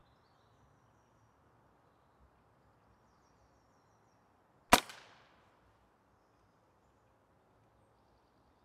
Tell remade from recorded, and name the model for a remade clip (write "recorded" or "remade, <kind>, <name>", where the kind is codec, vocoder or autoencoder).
recorded